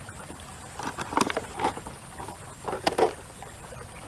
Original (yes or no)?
no